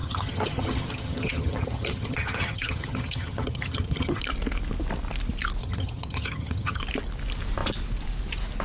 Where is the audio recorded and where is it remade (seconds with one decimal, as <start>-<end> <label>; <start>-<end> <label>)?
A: 0.0-4.2 remade; 4.2-5.6 recorded; 5.6-6.8 remade; 6.8-8.6 recorded